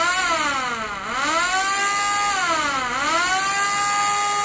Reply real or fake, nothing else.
real